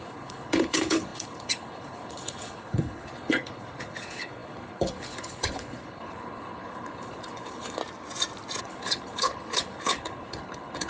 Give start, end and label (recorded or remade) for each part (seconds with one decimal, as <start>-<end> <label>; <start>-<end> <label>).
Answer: 0.0-7.8 remade; 7.8-8.6 recorded; 8.6-10.9 remade